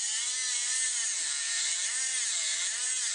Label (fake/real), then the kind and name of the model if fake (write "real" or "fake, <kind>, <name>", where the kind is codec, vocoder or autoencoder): real